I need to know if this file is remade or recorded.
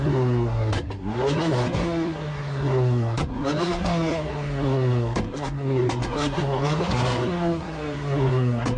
remade